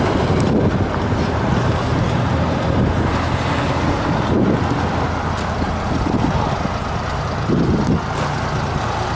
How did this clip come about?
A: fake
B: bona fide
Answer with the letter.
B